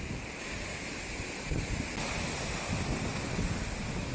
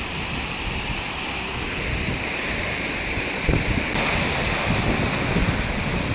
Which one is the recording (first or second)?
first